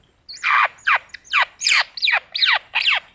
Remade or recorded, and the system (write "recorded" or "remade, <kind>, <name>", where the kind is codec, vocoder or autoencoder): recorded